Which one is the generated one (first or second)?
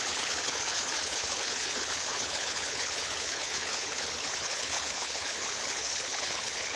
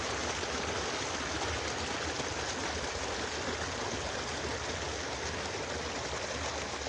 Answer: first